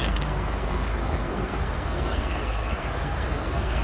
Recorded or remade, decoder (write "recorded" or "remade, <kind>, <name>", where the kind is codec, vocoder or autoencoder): remade, codec, SNAC